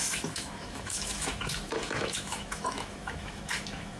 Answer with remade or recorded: remade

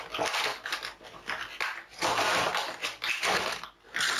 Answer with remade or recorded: recorded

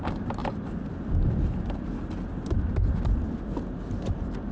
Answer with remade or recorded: remade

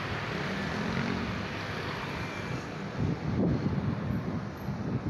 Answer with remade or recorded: recorded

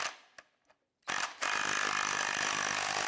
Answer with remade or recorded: recorded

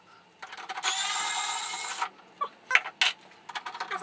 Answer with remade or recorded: recorded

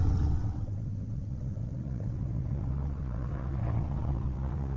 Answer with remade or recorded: remade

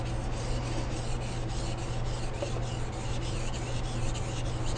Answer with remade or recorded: recorded